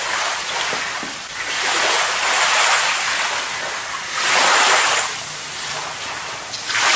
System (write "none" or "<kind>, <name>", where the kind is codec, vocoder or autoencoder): none